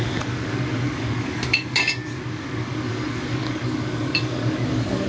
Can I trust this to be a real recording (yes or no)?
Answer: no